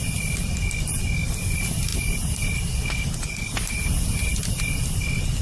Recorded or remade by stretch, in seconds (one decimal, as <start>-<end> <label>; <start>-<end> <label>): 0.0-5.4 recorded